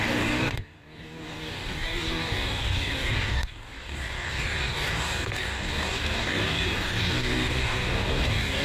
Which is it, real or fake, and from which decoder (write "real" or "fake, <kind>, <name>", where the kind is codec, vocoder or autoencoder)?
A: fake, codec, DAC